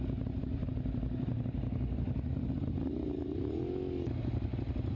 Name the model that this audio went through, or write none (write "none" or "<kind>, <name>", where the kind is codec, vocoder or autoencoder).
none